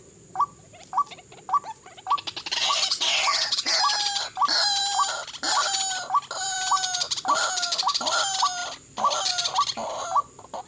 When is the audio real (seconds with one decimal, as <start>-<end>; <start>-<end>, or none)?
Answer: 0.0-2.6; 3.8-10.7